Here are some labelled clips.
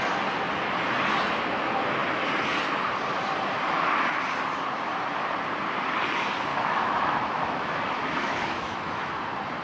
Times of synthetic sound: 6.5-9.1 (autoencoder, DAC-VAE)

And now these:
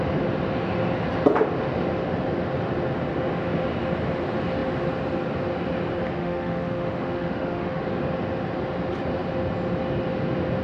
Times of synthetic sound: 6.2-7.8 (autoencoder, DAC-VAE)

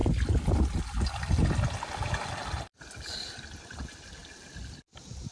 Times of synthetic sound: none